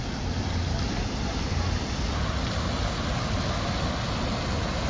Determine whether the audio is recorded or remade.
recorded